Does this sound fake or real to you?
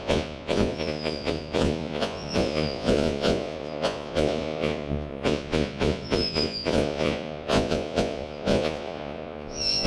fake